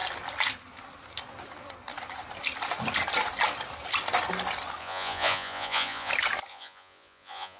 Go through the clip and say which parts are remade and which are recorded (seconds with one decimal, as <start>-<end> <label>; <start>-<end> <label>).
0.0-4.8 recorded; 4.8-6.1 remade; 6.1-6.5 recorded; 6.5-7.6 remade

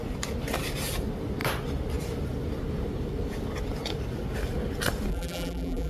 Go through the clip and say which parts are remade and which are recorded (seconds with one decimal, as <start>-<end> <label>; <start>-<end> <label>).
0.0-5.1 recorded; 5.1-5.9 remade

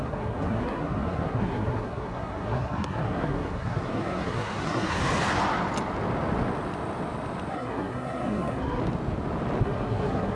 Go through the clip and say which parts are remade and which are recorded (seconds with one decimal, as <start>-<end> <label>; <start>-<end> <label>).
0.0-5.0 remade; 5.0-7.5 recorded; 7.5-8.8 remade; 8.8-9.6 recorded; 9.6-10.4 remade

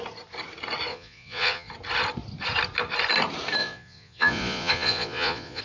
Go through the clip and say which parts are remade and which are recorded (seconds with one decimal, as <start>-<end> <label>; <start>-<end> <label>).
0.0-0.9 recorded; 0.9-1.7 remade; 1.7-3.6 recorded; 3.6-5.6 remade

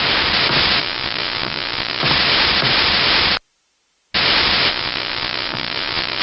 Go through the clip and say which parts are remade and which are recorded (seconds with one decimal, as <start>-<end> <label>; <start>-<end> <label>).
0.0-0.8 recorded; 0.8-2.0 remade; 2.0-4.7 recorded; 4.7-6.2 remade

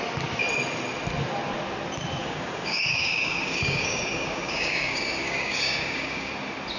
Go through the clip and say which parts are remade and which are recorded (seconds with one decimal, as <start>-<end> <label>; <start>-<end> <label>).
0.0-2.2 recorded; 2.2-6.3 remade; 6.3-6.8 recorded

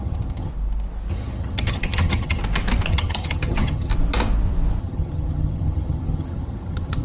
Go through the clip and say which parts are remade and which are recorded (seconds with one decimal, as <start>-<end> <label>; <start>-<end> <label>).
0.0-0.5 remade; 0.5-1.1 recorded; 1.1-2.4 remade; 2.4-2.9 recorded; 2.9-3.9 remade; 3.9-4.8 recorded; 4.8-7.0 remade